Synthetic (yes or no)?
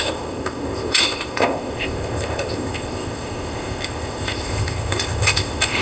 yes